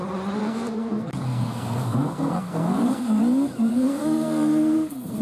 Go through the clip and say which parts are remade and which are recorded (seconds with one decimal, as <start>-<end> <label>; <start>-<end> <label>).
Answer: 0.0-0.4 recorded; 0.4-3.2 remade; 3.2-3.7 recorded; 3.7-5.2 remade